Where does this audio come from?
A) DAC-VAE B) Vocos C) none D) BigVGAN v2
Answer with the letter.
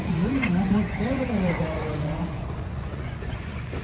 B